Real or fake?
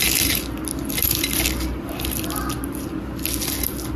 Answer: real